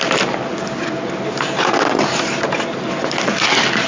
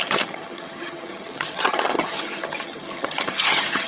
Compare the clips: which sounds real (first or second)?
first